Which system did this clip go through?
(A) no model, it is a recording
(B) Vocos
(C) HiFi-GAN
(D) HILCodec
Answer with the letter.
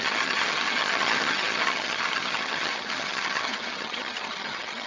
C